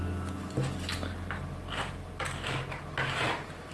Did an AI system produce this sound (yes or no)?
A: no